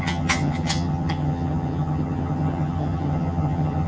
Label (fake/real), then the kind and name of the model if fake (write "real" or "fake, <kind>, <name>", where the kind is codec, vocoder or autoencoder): fake, vocoder, HiFi-GAN